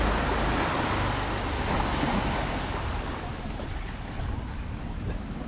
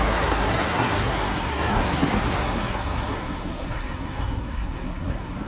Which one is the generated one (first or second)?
second